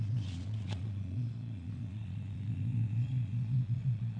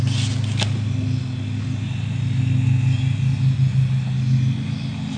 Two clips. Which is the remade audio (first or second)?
first